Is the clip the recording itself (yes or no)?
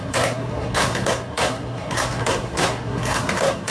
no